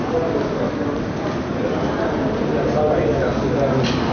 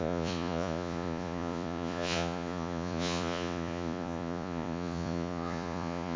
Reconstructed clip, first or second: second